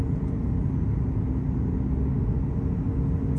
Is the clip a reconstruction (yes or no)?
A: no